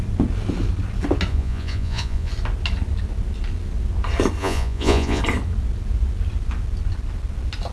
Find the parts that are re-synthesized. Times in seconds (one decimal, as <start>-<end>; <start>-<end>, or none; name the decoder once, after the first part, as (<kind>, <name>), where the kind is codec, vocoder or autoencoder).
1.3-2.3 (vocoder, Vocos); 4.4-5.2